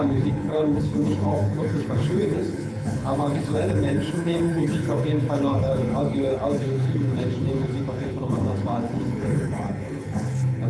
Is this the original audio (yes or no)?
no